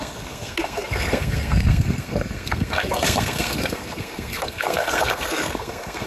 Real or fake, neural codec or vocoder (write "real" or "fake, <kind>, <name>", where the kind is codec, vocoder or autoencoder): fake, codec, SNAC